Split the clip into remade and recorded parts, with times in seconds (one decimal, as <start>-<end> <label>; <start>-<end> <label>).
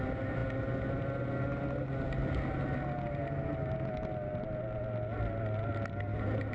0.0-6.5 recorded